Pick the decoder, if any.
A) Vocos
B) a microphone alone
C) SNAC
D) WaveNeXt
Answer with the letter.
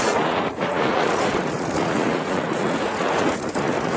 A